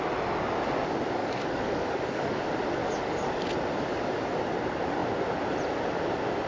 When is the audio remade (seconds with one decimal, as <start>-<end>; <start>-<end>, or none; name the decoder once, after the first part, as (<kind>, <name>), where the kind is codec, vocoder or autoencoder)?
1.2-2.4 (codec, DAC); 2.8-3.4